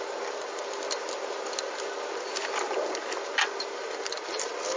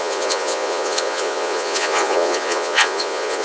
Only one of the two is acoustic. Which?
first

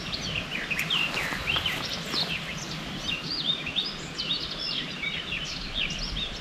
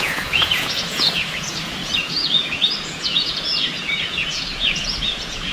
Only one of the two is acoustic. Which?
first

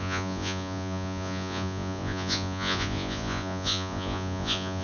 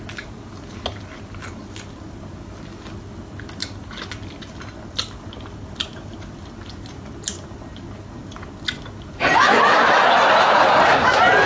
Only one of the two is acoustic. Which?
second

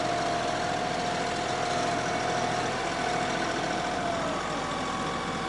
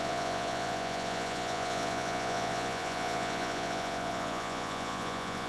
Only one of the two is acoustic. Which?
first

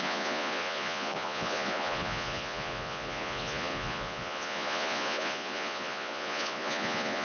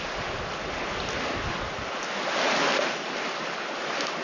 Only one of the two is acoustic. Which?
second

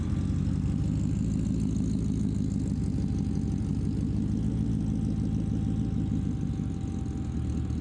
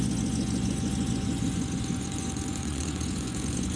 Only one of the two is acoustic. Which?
first